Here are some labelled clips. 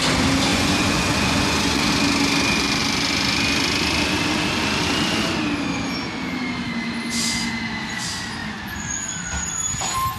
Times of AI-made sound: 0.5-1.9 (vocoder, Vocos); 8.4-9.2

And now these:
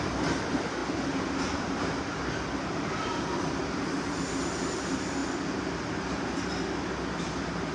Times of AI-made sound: none

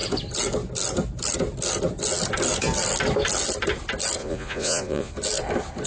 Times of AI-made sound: 4.2-5.1 (vocoder, Vocos)

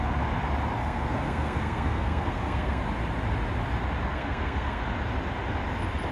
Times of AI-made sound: 0.8-2.8 (codec, SNAC); 4.1-4.8

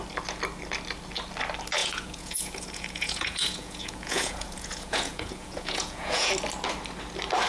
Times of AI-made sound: 1.8-6.3 (vocoder, Vocos)

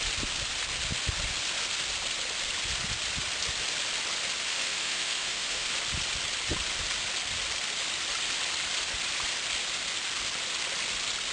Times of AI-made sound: 4.5-5.7 (autoencoder, DAC-VAE)

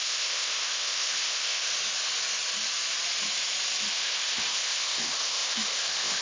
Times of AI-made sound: 0.0-1.7 (codec, ZipCodec); 3.9-6.2